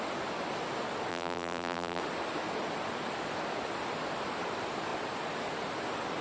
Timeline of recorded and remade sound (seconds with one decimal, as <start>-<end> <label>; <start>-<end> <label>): 0.0-1.1 recorded; 1.1-2.0 remade; 2.0-6.2 recorded